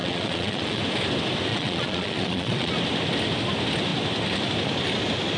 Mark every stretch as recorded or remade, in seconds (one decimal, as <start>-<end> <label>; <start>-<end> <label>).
0.0-0.8 remade; 0.8-1.5 recorded; 1.5-2.7 remade; 2.7-5.4 recorded